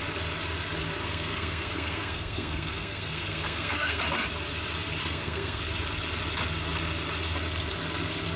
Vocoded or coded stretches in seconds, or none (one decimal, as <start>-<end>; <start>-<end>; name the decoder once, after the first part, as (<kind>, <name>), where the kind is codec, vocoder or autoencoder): 1.0-4.0 (codec, SNAC); 5.0-5.6